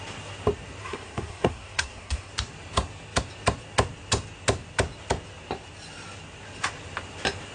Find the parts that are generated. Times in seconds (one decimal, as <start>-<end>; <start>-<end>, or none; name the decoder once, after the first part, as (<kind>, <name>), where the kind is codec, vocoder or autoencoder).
0.8-2.3 (codec, SNAC)